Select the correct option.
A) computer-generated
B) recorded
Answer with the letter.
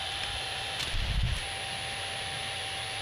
B